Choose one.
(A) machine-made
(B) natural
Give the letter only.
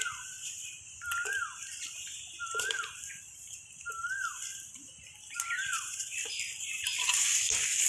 B